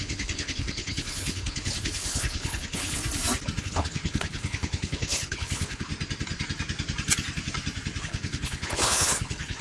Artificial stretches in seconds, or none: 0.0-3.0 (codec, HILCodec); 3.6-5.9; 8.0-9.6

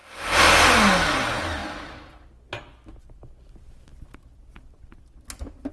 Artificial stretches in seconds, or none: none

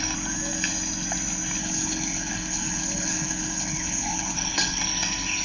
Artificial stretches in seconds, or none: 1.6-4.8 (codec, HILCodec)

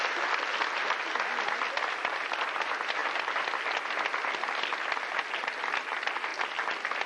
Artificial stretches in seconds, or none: none

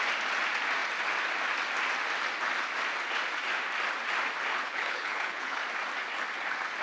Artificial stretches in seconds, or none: 4.5-5.6 (codec, HILCodec)

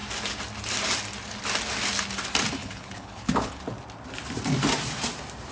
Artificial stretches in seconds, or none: 2.6-3.6 (codec, HILCodec)